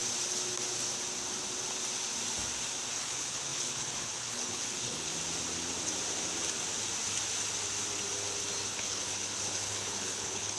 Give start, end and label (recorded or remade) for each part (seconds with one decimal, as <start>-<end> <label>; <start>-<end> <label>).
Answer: 0.0-3.0 recorded; 3.0-5.1 remade; 5.1-8.7 recorded; 8.7-10.6 remade